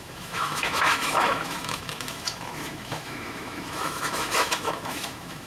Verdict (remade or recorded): remade